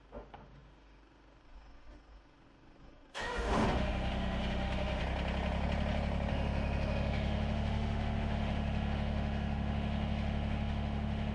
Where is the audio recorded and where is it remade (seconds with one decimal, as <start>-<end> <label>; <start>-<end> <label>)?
0.0-5.0 remade; 5.0-6.3 recorded; 6.3-11.3 remade